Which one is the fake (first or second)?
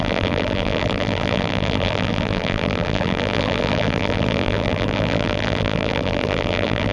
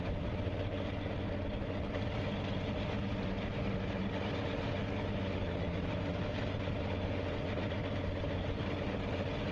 first